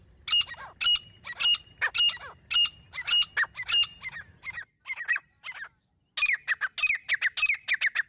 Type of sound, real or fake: real